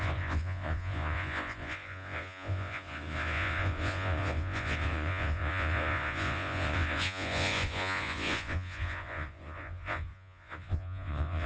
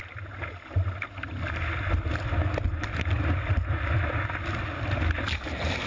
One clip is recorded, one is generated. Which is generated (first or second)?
first